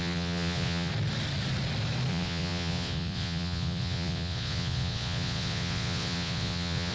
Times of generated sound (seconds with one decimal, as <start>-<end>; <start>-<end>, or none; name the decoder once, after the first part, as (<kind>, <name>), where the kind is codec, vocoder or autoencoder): 0.0-0.9 (vocoder, Vocos); 2.1-6.9